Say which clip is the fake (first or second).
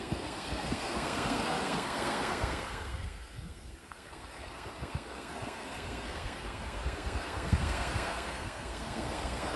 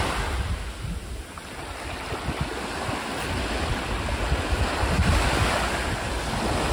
first